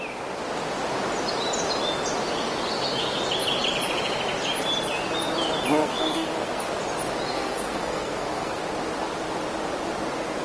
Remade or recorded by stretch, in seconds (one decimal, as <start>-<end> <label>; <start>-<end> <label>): 0.0-5.8 recorded; 5.8-6.6 remade; 6.6-7.3 recorded; 7.3-8.6 remade; 8.6-10.4 recorded

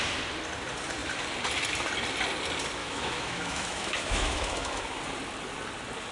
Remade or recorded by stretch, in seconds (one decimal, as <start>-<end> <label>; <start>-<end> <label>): 0.0-2.8 recorded; 2.8-5.0 remade; 5.0-6.1 recorded

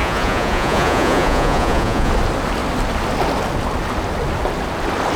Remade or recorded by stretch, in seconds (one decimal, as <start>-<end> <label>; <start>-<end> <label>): 0.0-2.1 remade; 2.1-5.2 recorded